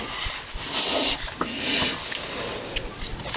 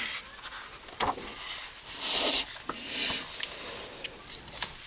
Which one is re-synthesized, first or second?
first